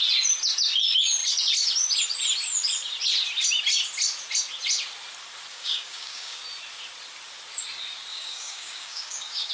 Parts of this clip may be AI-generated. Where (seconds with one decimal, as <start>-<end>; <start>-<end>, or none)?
5.5-6.4; 8.1-9.5